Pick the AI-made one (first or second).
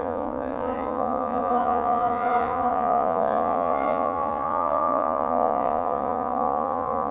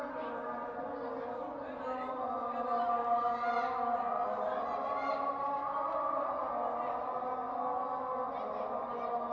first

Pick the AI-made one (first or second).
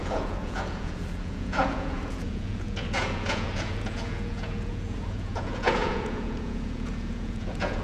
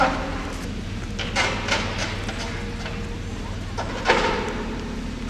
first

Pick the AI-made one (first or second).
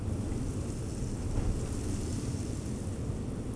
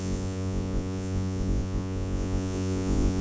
second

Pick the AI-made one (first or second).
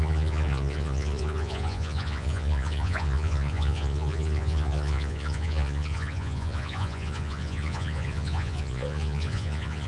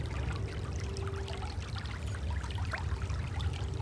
first